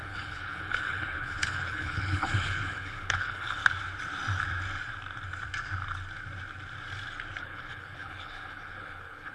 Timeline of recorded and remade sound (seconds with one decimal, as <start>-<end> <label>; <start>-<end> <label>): 0.0-3.6 remade; 3.6-7.4 recorded; 7.4-9.3 remade